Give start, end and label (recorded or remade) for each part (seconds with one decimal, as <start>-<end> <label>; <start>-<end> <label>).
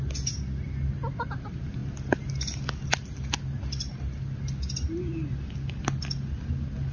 0.0-6.9 recorded